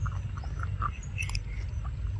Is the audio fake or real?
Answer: real